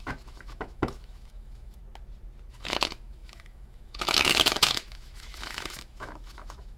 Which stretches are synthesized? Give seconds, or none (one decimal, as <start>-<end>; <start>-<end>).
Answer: 0.0-1.8; 2.5-6.8